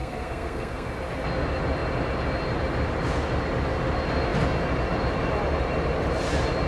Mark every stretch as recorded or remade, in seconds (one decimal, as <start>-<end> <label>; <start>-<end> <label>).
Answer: 0.0-0.9 remade; 0.9-6.7 recorded

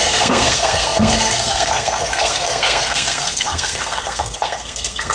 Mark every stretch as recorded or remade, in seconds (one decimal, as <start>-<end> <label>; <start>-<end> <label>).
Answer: 0.0-5.1 remade

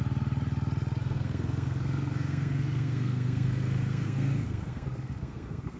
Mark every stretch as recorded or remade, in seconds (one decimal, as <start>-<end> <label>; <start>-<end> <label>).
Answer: 0.0-1.0 recorded; 1.0-5.8 remade

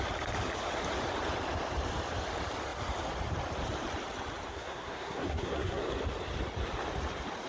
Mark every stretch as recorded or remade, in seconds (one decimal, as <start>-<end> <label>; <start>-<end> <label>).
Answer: 0.0-4.5 recorded; 4.5-5.8 remade; 5.8-7.5 recorded